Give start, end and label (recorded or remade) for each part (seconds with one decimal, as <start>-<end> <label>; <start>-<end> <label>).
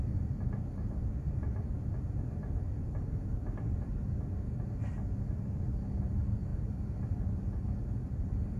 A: 0.0-1.1 remade; 1.1-1.9 recorded; 1.9-3.9 remade; 3.9-5.4 recorded; 5.4-8.6 remade